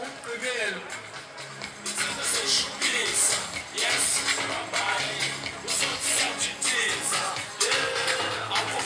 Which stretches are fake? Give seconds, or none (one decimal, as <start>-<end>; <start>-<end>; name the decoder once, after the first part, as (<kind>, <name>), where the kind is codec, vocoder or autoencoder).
5.9-7.7 (vocoder, Vocos)